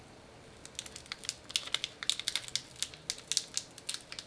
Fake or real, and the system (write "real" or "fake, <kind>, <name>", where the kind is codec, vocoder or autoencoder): real